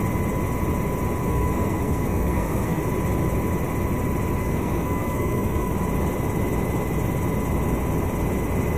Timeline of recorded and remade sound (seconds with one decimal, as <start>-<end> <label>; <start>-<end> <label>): 0.0-1.2 recorded; 1.2-2.8 remade; 2.8-4.4 recorded; 4.4-5.7 remade; 5.7-8.8 recorded